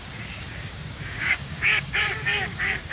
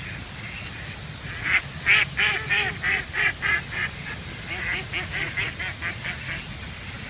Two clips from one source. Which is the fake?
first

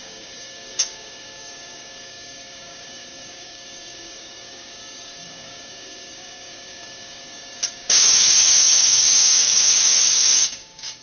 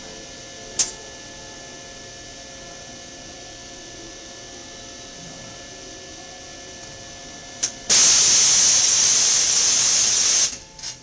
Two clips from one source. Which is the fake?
first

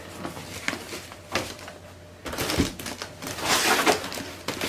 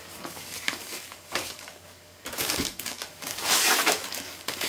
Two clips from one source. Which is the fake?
second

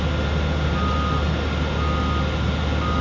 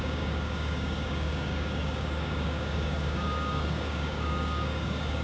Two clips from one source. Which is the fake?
second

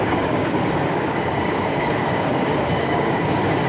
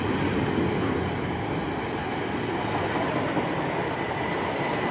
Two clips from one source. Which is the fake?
first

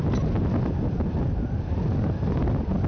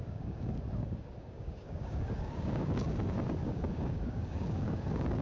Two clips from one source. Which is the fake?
second